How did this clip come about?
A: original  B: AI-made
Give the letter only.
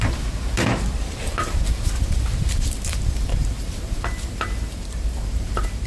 B